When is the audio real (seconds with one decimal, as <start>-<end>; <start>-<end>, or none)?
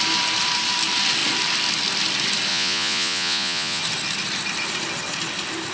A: 0.0-2.5; 3.8-5.7